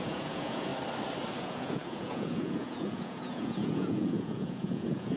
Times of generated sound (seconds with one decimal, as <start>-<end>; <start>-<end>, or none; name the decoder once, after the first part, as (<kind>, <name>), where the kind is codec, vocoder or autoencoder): 0.0-0.7 (vocoder, Vocos); 1.4-5.2